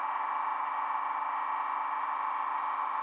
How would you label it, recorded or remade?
recorded